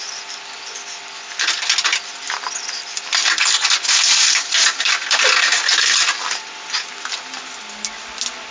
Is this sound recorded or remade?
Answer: recorded